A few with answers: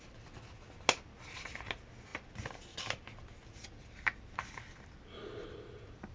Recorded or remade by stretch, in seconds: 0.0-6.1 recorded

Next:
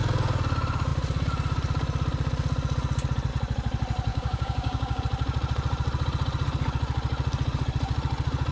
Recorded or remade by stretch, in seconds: 0.0-4.1 recorded; 4.1-5.0 remade; 5.0-8.5 recorded

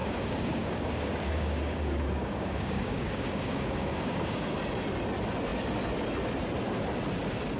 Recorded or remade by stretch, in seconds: 0.0-4.5 remade; 4.5-7.6 recorded

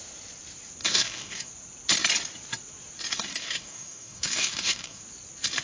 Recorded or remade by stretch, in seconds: 0.0-0.8 recorded; 0.8-1.5 remade; 1.5-3.3 recorded; 3.3-5.0 remade; 5.0-5.6 recorded

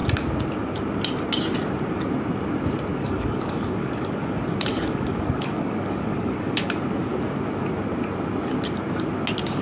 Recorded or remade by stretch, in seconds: 0.0-2.9 recorded; 2.9-6.6 remade; 6.6-9.6 recorded

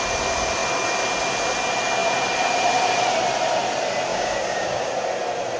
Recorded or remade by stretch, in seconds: 0.0-4.1 recorded; 4.1-4.9 remade; 4.9-5.6 recorded

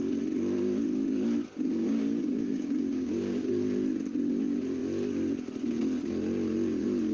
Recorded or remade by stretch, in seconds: 0.0-1.8 recorded; 1.8-3.4 remade; 3.4-7.1 recorded